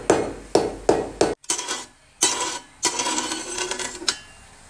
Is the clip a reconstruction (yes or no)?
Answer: no